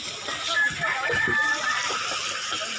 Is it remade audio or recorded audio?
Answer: recorded